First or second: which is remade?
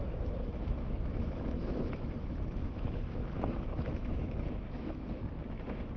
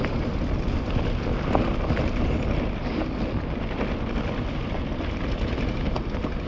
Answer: first